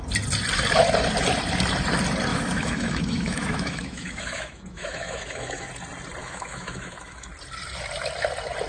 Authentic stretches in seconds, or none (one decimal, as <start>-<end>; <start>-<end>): 0.0-2.3; 5.7-6.2; 7.3-8.7